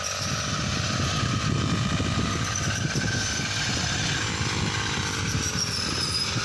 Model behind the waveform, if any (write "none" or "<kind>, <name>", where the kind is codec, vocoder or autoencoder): none